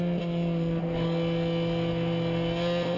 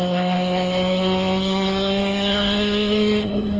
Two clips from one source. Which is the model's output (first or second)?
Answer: second